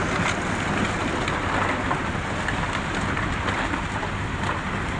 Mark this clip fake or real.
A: real